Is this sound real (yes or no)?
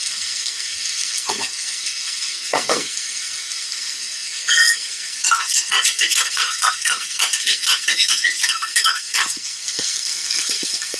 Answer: no